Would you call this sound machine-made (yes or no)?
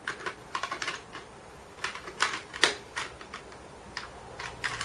no